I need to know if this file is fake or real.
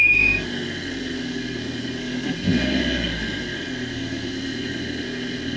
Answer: fake